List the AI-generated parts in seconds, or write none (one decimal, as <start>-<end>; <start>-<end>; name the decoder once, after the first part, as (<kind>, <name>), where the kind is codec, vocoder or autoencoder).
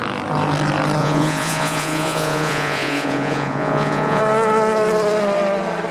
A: 1.0-4.2 (vocoder, Vocos)